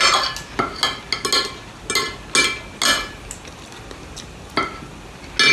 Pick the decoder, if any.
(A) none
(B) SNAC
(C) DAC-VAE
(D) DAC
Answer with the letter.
A